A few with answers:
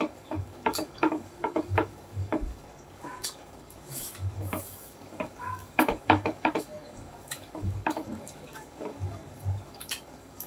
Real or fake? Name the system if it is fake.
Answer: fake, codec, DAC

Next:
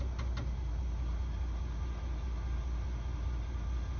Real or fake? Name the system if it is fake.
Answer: real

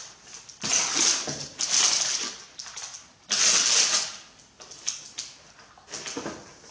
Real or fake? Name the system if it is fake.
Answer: real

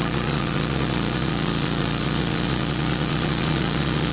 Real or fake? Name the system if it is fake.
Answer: fake, vocoder, Vocos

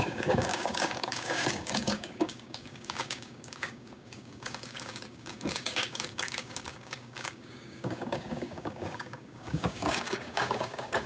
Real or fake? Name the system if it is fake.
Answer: fake, codec, DAC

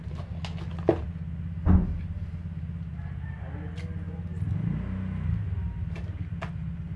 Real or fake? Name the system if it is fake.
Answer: real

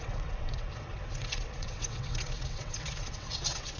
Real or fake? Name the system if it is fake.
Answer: fake, vocoder, WaveNeXt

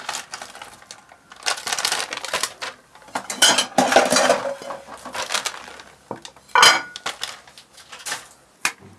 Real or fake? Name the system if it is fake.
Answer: real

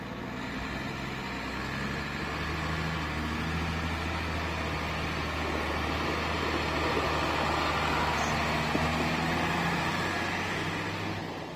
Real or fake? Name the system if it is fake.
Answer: real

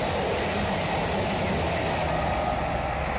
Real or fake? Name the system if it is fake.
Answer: real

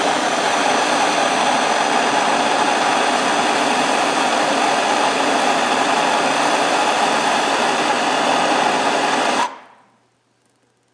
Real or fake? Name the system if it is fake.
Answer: real